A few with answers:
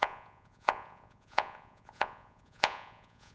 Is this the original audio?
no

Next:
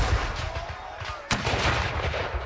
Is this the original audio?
yes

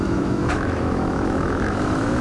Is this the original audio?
no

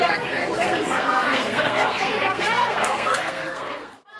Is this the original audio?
no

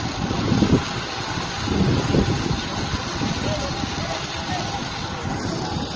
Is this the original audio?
yes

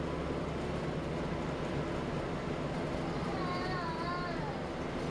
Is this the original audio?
yes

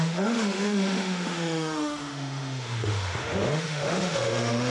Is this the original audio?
no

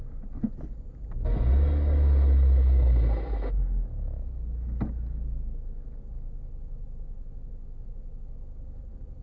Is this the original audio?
yes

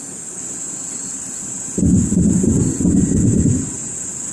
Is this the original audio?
yes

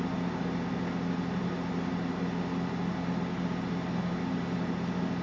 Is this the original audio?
yes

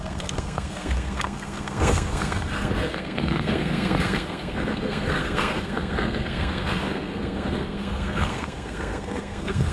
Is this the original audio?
no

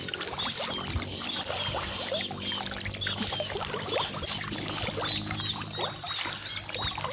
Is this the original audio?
yes